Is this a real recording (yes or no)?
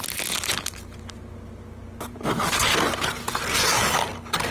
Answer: yes